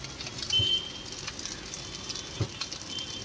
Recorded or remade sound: recorded